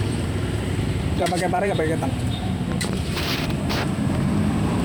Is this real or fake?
fake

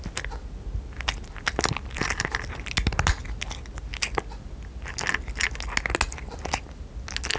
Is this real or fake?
real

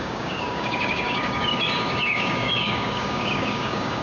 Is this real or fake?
fake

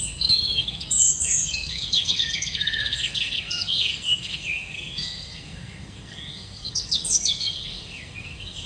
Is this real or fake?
fake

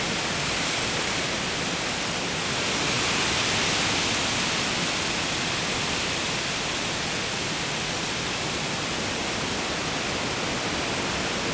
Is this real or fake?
real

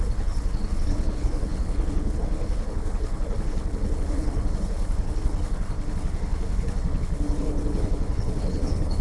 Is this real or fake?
fake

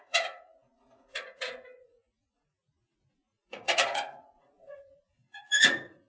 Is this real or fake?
fake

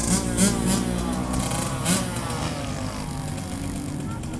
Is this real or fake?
real